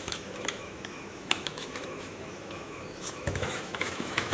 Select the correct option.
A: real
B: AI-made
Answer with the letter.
B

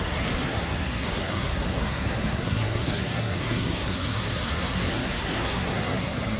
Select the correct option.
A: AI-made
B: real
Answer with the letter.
A